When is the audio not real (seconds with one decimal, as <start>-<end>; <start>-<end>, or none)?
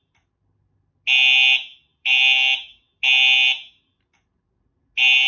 none